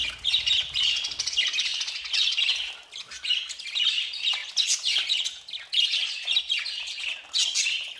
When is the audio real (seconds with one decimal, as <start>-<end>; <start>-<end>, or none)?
0.0-8.0